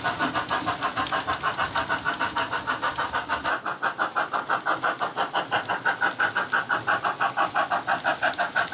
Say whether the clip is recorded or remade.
recorded